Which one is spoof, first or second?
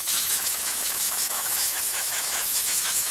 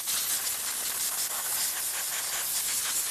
first